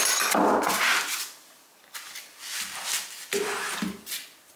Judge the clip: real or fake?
real